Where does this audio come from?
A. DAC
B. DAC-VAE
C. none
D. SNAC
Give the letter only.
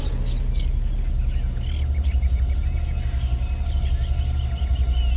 C